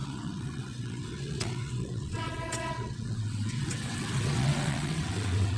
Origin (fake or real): fake